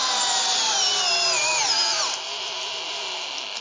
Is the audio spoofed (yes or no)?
no